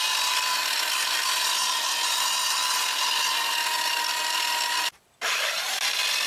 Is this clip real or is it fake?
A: real